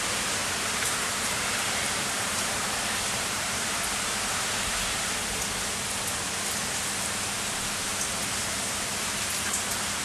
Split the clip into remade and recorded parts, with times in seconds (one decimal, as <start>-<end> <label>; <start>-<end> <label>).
0.0-0.4 recorded; 0.4-5.1 remade; 5.1-10.0 recorded